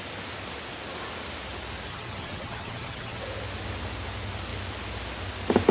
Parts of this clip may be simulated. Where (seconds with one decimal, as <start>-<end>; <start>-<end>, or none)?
1.9-3.2